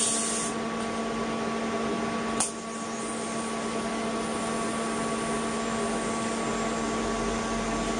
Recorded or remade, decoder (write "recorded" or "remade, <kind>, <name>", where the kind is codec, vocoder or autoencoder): recorded